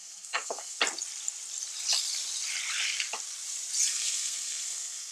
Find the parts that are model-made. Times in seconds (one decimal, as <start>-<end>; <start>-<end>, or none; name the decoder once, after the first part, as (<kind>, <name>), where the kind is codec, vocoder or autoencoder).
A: 0.0-0.8 (codec, SNAC); 3.9-5.1